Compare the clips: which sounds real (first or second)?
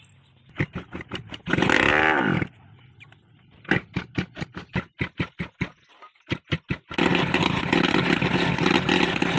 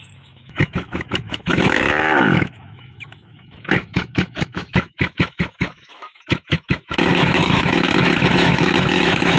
first